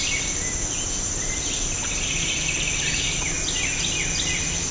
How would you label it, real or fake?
real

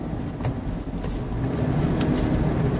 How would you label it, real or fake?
real